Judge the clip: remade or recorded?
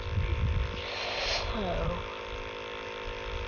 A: recorded